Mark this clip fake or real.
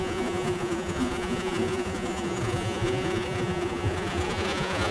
fake